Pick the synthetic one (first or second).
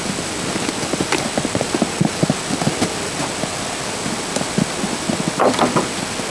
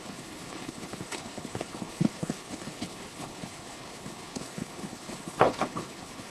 second